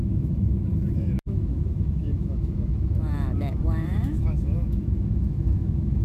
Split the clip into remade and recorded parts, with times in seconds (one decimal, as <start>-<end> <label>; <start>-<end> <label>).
0.0-6.0 remade